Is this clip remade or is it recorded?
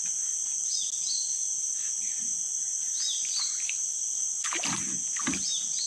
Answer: recorded